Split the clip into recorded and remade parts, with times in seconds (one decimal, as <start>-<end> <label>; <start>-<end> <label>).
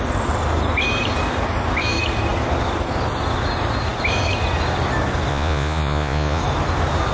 0.0-5.3 recorded; 5.3-6.4 remade; 6.4-7.1 recorded